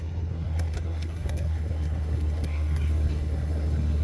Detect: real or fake fake